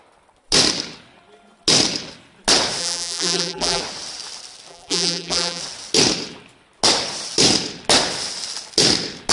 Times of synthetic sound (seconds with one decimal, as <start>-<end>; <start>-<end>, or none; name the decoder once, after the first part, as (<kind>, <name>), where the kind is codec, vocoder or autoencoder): 2.8-3.8 (vocoder, BigVGAN v2); 4.7-5.6